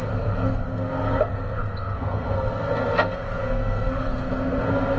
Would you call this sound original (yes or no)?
no